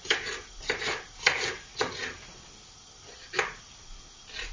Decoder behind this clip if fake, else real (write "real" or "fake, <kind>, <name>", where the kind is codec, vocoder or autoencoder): real